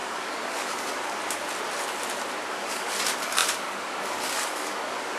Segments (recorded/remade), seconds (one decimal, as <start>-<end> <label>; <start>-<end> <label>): 0.0-1.2 remade; 1.2-2.5 recorded; 2.5-5.2 remade